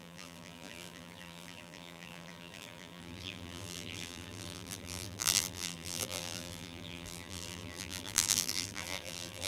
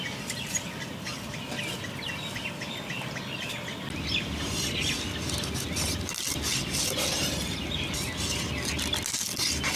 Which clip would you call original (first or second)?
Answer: second